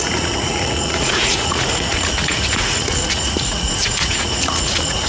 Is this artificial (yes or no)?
yes